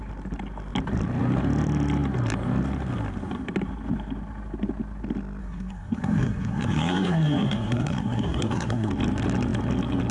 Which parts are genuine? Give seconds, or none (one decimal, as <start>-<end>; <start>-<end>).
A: 0.0-5.4; 8.9-10.1